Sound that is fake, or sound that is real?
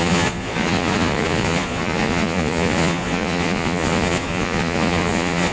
fake